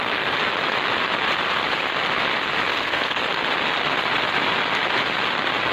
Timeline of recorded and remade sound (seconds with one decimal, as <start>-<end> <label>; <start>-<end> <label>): 0.0-2.7 recorded; 2.7-3.2 remade; 3.2-5.7 recorded